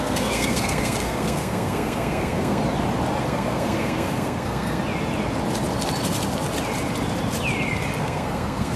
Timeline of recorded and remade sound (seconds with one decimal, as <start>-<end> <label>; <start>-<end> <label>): 0.0-2.6 remade; 2.6-3.2 recorded; 3.2-4.8 remade; 4.8-8.0 recorded; 8.0-8.8 remade